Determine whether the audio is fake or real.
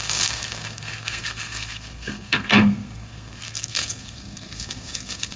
fake